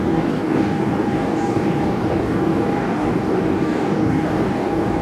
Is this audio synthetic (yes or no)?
yes